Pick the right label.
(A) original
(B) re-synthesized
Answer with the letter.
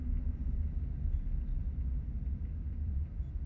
A